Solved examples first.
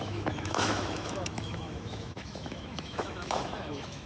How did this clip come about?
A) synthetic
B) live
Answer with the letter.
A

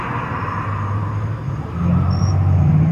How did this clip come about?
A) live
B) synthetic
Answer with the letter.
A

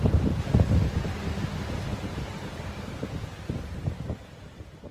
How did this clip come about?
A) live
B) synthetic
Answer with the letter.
A